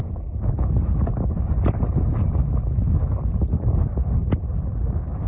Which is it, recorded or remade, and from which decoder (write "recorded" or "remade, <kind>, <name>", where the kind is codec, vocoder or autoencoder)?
recorded